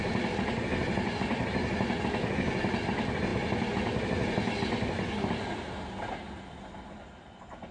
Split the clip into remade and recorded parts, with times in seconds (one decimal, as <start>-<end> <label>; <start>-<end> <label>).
0.0-7.7 recorded